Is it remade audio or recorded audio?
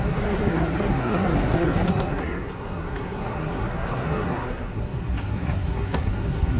remade